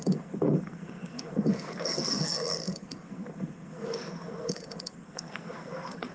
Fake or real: fake